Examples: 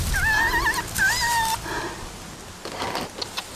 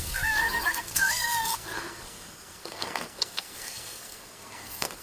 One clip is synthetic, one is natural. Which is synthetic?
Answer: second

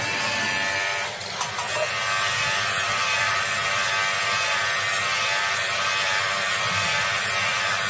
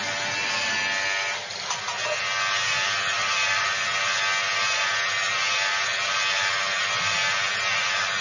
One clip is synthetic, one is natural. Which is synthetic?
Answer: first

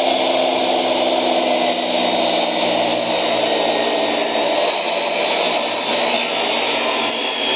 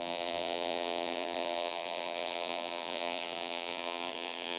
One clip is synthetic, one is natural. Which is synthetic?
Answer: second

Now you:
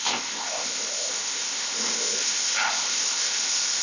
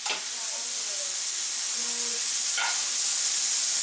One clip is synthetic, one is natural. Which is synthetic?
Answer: first